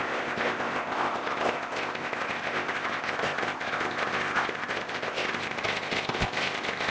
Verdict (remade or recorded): remade